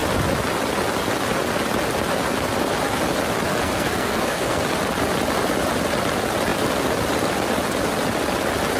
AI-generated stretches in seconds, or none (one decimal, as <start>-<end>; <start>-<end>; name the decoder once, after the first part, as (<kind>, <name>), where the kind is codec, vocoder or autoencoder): 3.5-4.6 (codec, SNAC)